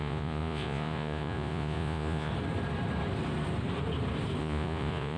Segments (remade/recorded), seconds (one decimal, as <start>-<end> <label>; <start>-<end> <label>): 0.0-2.3 remade; 2.3-4.4 recorded; 4.4-5.2 remade